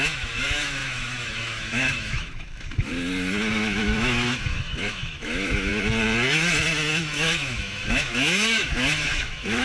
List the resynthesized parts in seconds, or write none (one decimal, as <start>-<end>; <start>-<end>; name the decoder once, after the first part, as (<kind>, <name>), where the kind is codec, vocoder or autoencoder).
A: 0.0-2.9 (autoencoder, DAC-VAE); 3.5-5.7; 7.0-9.6